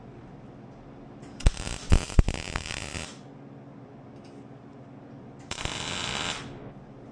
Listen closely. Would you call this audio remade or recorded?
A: recorded